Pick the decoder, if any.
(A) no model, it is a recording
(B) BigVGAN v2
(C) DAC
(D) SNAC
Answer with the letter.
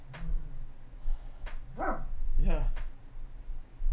A